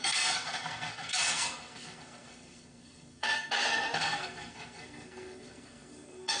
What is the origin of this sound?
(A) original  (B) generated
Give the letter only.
B